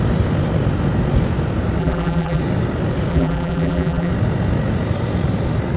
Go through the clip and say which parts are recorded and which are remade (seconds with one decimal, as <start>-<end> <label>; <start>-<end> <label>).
0.0-1.8 recorded; 1.8-2.4 remade; 2.4-3.1 recorded; 3.1-4.1 remade; 4.1-5.8 recorded